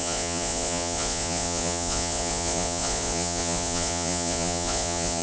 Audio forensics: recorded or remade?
remade